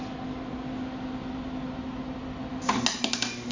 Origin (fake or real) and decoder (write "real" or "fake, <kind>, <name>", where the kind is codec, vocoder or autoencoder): real